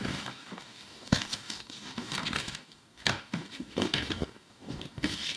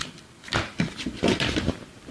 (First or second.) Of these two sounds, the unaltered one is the second